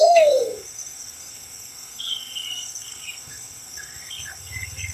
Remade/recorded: remade